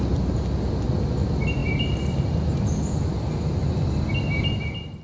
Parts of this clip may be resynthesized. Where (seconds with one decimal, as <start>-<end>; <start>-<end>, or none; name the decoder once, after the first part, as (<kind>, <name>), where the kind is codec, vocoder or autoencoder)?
none